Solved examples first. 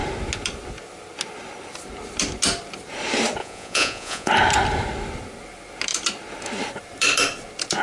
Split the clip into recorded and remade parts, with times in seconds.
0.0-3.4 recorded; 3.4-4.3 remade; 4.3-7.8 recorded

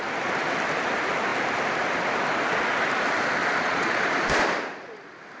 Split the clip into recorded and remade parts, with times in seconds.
0.0-3.4 recorded; 3.4-4.0 remade; 4.0-5.4 recorded

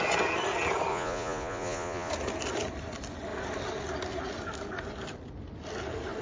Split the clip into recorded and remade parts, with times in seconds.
0.0-0.9 recorded; 0.9-2.1 remade; 2.1-6.2 recorded

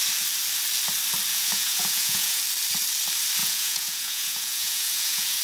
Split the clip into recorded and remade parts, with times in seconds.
0.0-1.3 recorded; 1.3-2.4 remade; 2.4-3.4 recorded; 3.4-5.4 remade

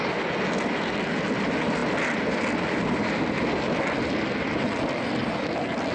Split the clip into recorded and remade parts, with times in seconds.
0.0-5.9 recorded

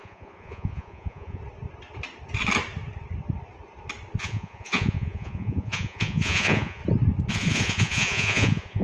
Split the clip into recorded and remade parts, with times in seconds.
0.0-1.4 remade; 1.4-4.2 recorded; 4.2-6.8 remade; 6.8-7.3 recorded; 7.3-8.8 remade